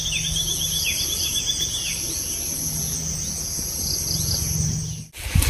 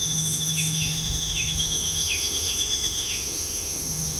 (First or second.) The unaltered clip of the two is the first